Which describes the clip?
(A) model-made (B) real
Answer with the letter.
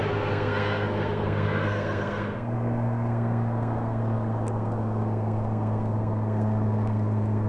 A